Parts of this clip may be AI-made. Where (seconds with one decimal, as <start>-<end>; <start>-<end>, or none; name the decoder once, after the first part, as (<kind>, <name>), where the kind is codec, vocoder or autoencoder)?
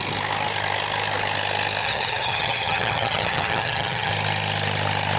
1.8-4.1 (vocoder, HiFi-GAN)